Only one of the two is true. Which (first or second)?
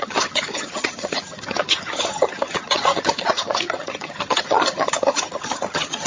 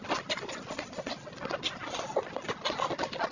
second